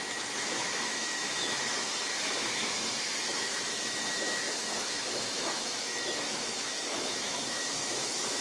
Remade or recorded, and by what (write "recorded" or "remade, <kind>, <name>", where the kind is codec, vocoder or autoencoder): remade, autoencoder, DAC-VAE